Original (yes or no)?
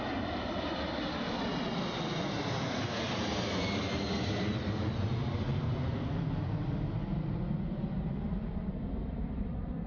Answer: yes